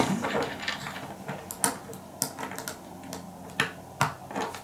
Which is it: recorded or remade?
recorded